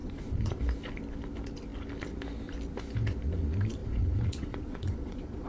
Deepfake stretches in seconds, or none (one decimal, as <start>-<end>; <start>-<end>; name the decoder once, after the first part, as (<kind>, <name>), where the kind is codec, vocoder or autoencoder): 0.0-0.6 (vocoder, Vocos); 3.8-5.5